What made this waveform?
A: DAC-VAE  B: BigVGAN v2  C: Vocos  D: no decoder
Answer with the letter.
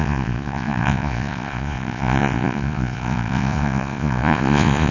C